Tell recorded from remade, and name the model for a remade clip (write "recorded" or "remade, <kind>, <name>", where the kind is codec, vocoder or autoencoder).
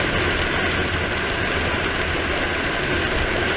recorded